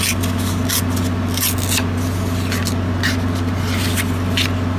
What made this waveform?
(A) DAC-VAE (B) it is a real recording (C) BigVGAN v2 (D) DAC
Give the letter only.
B